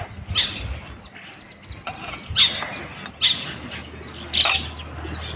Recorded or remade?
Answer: recorded